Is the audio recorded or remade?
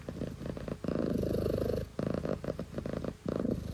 recorded